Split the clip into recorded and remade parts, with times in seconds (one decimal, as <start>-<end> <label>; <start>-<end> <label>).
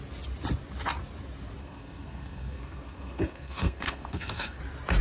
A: 0.0-1.6 recorded; 1.6-4.6 remade; 4.6-5.0 recorded